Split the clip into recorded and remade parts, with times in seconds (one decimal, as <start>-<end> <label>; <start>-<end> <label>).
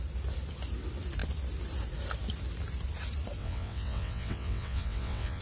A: 0.0-3.4 recorded; 3.4-5.4 remade